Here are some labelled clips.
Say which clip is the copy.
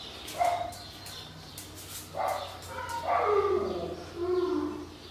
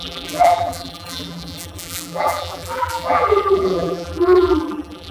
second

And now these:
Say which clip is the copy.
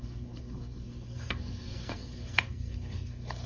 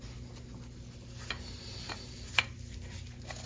first